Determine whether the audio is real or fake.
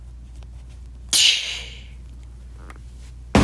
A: real